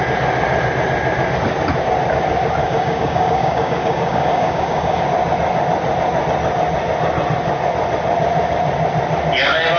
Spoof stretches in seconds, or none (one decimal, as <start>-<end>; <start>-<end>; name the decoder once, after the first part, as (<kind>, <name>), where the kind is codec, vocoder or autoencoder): 2.6-5.0 (codec, DAC)